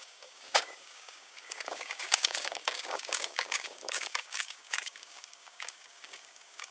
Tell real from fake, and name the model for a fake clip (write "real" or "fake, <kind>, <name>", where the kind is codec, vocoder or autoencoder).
fake, codec, DAC